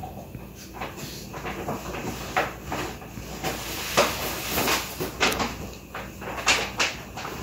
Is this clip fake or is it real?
real